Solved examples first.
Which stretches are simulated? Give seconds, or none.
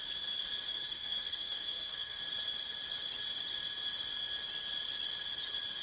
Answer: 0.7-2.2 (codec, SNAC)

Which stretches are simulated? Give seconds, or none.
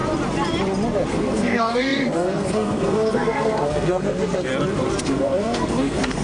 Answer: 1.1-4.5 (codec, SNAC); 5.0-6.2